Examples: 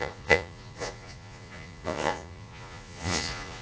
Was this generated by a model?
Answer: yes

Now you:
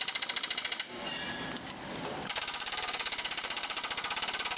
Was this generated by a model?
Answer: no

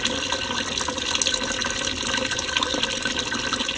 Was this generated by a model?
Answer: no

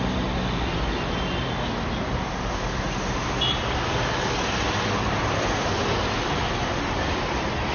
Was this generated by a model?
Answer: no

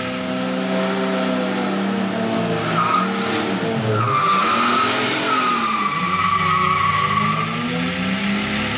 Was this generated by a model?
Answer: no